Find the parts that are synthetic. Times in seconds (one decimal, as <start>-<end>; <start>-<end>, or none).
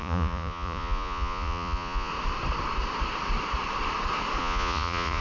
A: 0.0-2.1; 4.4-5.2